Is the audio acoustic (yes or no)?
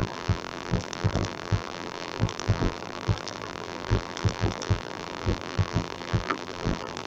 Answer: no